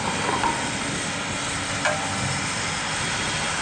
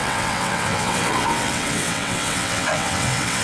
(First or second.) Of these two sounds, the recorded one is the first